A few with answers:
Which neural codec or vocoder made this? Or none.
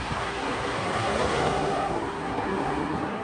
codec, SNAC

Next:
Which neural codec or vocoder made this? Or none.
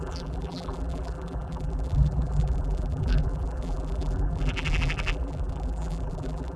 vocoder, BigVGAN v2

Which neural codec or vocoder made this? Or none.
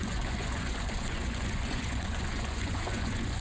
vocoder, Vocos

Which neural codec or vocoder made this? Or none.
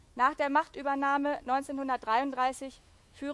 autoencoder, DAC-VAE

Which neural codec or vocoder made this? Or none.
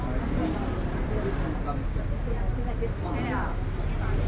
none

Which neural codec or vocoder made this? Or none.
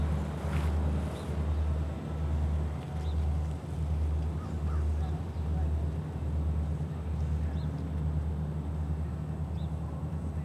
none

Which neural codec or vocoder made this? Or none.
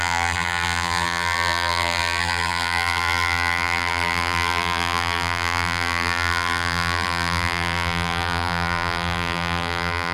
vocoder, BigVGAN v2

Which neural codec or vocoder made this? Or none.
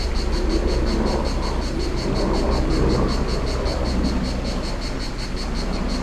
none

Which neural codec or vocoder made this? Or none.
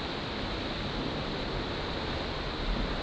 none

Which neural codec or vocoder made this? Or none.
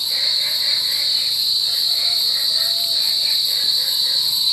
vocoder, BigVGAN v2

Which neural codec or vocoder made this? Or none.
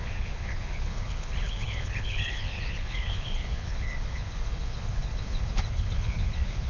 codec, HILCodec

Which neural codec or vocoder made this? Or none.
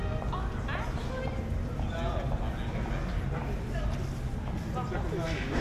none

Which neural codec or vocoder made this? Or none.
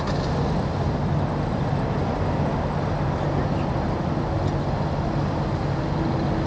none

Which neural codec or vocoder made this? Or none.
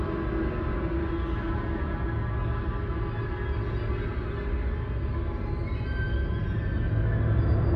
none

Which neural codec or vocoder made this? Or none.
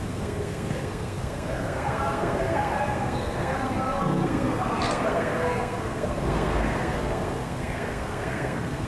codec, SNAC